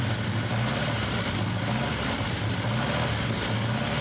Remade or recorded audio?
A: recorded